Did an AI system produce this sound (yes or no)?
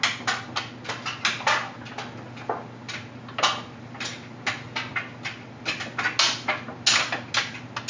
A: no